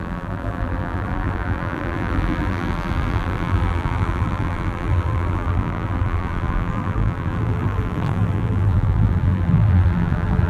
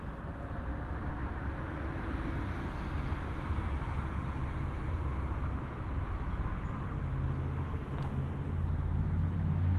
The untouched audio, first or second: second